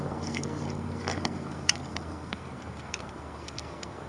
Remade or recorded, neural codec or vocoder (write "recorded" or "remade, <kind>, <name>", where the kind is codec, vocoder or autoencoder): remade, codec, SNAC